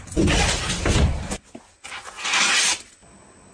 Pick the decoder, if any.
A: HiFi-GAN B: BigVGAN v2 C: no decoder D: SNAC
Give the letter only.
C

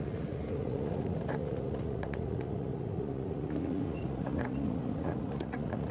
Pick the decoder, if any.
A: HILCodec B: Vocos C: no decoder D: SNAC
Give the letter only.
B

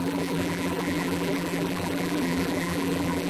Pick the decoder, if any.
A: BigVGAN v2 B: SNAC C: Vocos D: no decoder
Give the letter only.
A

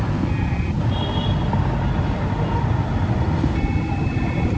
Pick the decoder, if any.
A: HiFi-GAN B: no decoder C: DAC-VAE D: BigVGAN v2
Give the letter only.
B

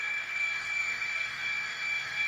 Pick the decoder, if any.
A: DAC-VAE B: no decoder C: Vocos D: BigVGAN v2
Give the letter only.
A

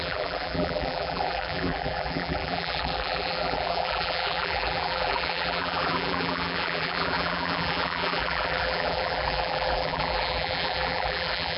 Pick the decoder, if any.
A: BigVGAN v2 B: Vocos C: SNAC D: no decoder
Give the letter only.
A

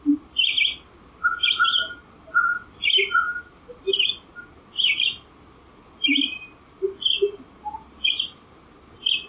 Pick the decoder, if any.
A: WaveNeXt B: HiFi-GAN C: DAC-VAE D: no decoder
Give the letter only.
D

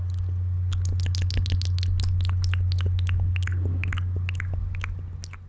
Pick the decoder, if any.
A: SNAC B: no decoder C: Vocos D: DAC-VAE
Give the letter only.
B